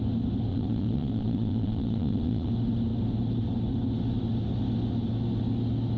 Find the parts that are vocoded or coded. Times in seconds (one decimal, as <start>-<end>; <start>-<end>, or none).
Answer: 0.5-2.5